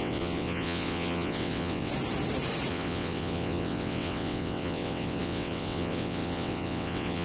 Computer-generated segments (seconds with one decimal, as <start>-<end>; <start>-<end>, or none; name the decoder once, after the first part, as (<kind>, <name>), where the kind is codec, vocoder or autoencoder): 0.0-1.9 (vocoder, WaveNeXt); 2.7-7.2